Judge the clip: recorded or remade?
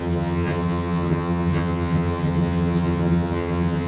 remade